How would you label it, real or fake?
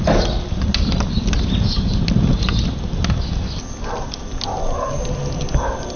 real